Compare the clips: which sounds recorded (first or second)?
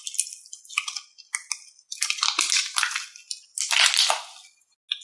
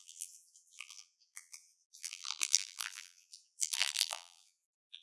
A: first